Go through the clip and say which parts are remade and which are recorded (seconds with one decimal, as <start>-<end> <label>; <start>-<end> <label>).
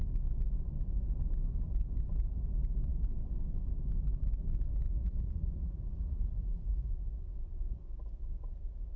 0.0-4.9 recorded; 4.9-6.9 remade; 6.9-9.0 recorded